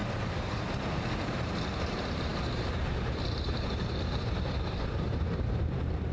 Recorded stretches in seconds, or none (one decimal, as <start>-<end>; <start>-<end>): none